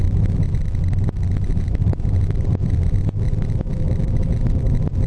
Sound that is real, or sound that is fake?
fake